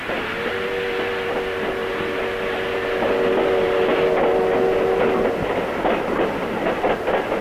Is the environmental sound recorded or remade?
recorded